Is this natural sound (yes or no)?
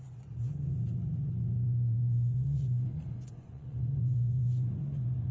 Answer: no